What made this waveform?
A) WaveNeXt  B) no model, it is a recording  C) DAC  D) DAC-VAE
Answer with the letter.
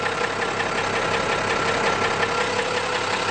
B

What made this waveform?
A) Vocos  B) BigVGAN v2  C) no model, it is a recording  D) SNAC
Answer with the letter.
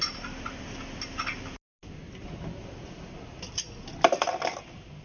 C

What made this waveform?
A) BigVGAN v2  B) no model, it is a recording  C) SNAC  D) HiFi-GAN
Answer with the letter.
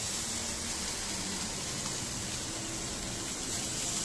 B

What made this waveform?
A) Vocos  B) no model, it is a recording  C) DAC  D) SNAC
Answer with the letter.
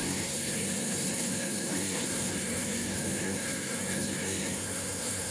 D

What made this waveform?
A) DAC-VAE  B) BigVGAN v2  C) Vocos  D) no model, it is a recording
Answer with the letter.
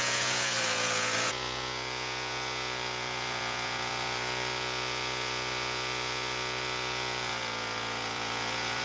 C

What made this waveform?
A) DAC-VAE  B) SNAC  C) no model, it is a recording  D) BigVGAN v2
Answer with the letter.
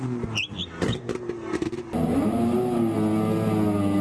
C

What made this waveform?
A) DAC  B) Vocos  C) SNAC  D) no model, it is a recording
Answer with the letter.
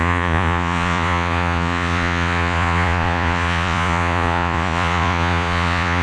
B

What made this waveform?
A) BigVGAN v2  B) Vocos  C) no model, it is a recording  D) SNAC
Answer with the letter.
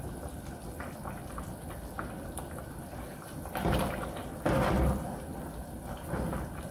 C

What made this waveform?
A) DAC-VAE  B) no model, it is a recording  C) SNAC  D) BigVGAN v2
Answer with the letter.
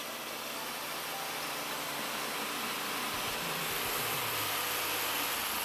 B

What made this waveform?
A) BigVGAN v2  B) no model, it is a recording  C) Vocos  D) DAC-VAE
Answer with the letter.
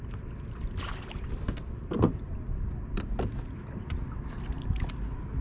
B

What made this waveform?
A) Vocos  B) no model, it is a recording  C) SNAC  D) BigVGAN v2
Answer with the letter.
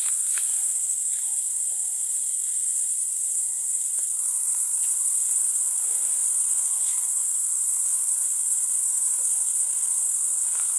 C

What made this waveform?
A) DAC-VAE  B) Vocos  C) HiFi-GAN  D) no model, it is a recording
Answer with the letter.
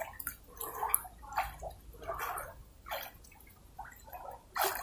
D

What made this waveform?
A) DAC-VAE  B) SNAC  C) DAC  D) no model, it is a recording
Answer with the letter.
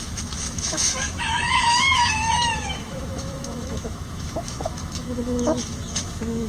A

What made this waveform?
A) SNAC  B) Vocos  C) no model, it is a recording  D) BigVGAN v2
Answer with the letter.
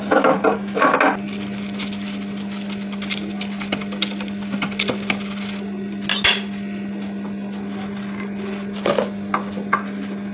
C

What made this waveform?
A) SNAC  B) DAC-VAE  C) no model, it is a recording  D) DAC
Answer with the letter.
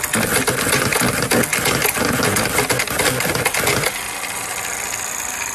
C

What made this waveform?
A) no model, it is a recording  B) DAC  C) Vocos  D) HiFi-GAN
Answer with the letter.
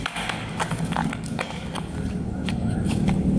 B